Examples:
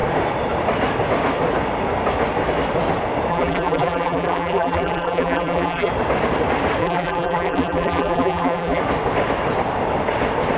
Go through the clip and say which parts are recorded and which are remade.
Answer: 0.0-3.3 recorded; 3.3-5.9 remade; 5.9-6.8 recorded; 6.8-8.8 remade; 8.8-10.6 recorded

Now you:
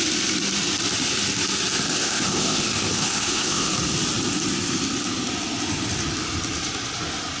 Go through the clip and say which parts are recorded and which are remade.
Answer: 0.0-2.0 recorded; 2.0-3.7 remade; 3.7-7.4 recorded

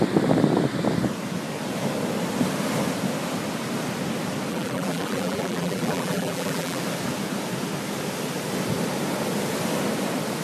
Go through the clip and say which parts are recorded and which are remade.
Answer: 0.0-4.5 recorded; 4.5-6.8 remade; 6.8-10.4 recorded